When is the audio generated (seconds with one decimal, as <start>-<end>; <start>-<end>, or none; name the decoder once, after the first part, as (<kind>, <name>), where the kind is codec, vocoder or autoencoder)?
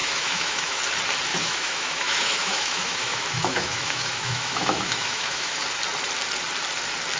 0.0-0.8 (autoencoder, DAC-VAE); 1.3-5.6